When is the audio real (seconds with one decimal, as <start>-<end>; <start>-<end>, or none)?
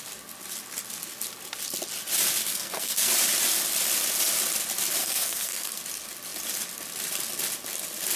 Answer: 0.0-2.5; 3.1-5.0; 5.8-8.2